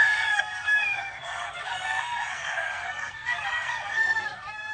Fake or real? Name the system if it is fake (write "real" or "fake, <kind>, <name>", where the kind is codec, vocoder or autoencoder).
fake, codec, SNAC